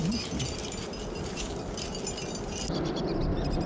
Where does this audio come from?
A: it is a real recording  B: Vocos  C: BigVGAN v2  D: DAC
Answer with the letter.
A